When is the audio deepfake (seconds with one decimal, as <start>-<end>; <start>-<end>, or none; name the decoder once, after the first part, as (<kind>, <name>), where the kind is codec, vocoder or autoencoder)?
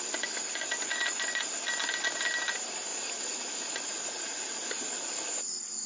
2.9-5.3 (vocoder, BigVGAN v2)